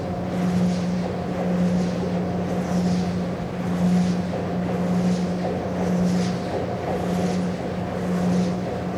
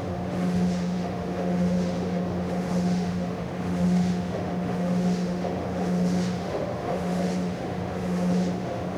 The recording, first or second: first